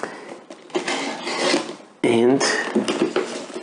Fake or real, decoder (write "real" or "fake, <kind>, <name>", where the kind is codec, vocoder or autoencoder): real